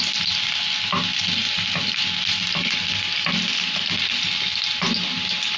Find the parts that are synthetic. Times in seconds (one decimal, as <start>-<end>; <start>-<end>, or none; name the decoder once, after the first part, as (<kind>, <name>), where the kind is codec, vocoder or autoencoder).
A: none